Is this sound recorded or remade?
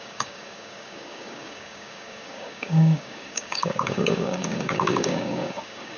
remade